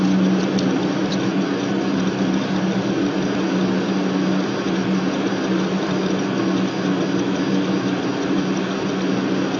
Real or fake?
real